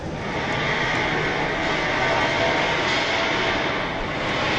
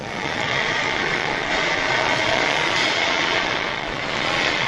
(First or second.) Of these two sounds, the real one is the first